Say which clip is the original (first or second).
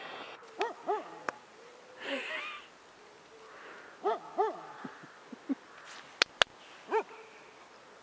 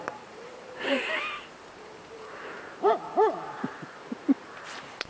first